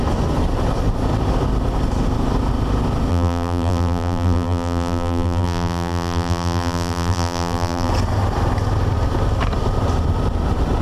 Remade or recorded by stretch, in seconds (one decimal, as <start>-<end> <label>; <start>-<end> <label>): 0.0-3.1 recorded; 3.1-7.9 remade; 7.9-10.8 recorded